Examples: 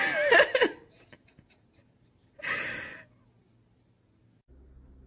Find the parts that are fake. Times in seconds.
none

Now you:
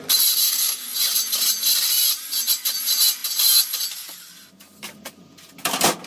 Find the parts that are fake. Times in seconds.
0.4-0.9 (codec, SNAC)

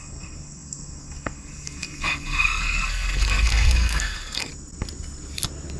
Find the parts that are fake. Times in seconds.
0.0-4.5 (codec, SNAC)

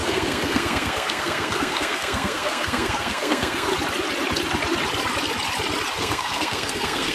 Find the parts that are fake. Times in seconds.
0.0-3.7 (codec, SNAC); 6.0-7.1

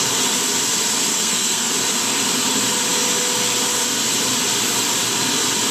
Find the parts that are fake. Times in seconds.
1.1-1.7 (codec, SNAC)

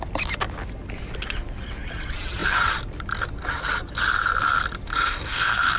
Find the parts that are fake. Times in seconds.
4.9-5.8 (codec, SNAC)

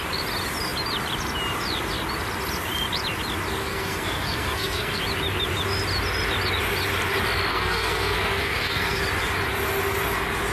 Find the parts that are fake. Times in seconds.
3.6-5.0 (codec, SNAC); 7.5-9.0